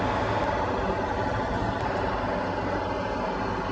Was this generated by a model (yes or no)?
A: no